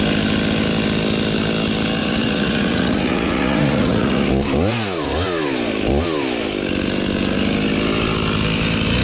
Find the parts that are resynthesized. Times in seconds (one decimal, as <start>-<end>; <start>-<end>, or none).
2.0-4.3